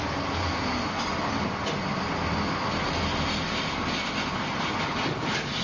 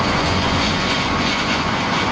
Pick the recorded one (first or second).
first